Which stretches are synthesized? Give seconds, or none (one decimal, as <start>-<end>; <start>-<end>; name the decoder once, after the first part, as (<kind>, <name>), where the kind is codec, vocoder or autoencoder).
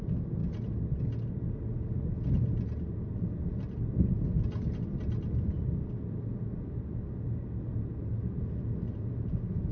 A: none